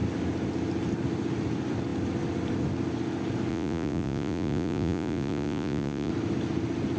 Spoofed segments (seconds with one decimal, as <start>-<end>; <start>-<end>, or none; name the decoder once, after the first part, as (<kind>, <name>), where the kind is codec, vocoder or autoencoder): 3.5-6.1 (vocoder, Vocos)

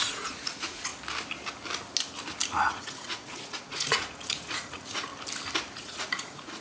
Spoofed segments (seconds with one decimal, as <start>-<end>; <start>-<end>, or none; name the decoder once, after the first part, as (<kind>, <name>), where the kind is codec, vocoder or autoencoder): 0.0-0.9 (vocoder, Vocos); 2.7-5.1; 5.7-6.6

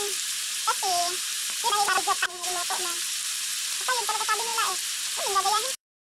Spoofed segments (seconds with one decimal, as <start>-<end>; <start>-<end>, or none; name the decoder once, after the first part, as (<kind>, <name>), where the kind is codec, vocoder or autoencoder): 0.0-6.0 (vocoder, BigVGAN v2)

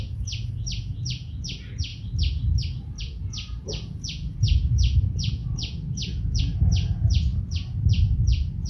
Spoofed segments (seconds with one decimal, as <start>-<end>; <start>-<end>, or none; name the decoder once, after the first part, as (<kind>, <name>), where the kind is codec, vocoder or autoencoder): 0.0-1.9 (vocoder, Vocos); 3.0-8.7

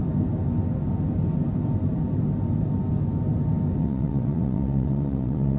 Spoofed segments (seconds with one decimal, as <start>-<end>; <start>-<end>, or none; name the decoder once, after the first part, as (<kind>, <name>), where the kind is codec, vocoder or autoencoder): 3.8-5.6 (vocoder, WaveNeXt)

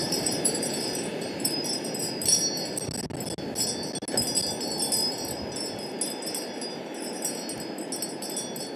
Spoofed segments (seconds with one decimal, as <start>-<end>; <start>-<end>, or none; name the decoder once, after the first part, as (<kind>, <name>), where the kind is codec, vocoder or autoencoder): 0.0-0.7 (vocoder, BigVGAN v2); 1.1-2.0